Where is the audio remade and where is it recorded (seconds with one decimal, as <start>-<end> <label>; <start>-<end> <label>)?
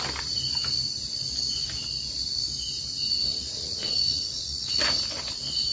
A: 0.0-3.3 recorded; 3.3-4.8 remade; 4.8-5.7 recorded